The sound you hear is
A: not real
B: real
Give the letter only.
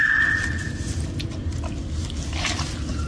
B